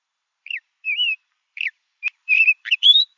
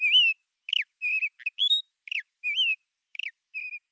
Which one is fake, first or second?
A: first